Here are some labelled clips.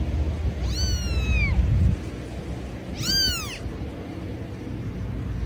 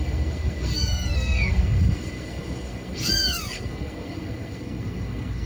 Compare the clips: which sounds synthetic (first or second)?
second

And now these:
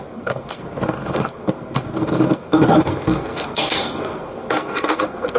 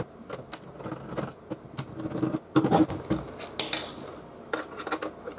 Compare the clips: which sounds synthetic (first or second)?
first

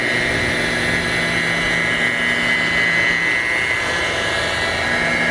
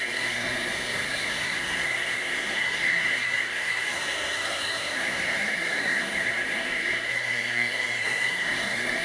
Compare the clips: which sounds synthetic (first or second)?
second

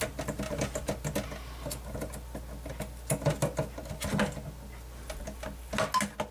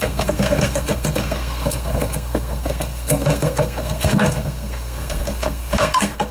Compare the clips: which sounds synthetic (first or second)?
second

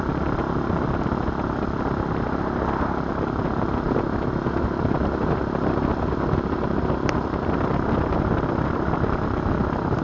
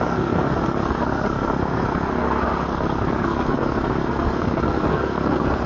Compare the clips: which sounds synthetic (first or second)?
second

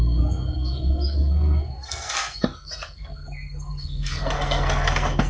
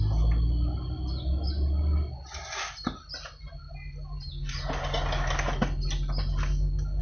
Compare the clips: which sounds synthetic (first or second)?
first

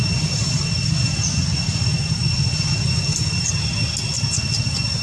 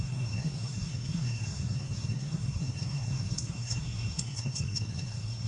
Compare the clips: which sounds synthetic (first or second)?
second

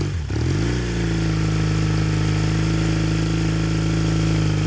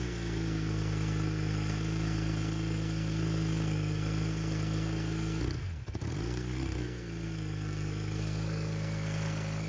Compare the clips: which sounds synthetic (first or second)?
second